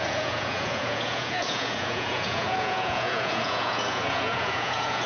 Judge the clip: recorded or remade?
remade